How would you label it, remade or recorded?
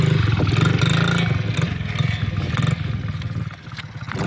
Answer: recorded